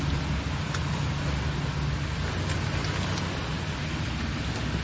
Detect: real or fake real